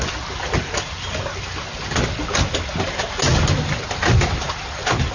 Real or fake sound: real